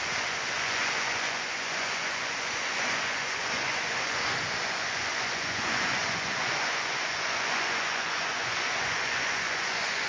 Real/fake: fake